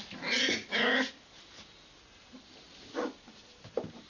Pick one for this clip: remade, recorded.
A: recorded